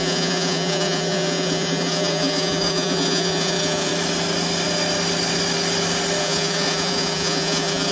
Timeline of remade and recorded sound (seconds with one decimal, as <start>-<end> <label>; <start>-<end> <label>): 0.0-3.9 remade; 3.9-6.2 recorded; 6.2-7.9 remade